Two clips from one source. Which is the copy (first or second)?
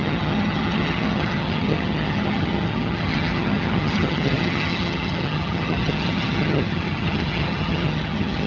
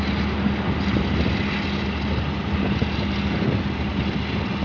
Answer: first